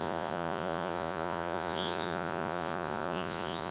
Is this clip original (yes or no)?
no